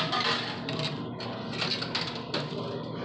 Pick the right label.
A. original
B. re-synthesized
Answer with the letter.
A